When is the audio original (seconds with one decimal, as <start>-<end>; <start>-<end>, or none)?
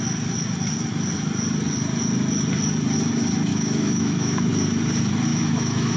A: 0.0-3.5; 4.5-5.3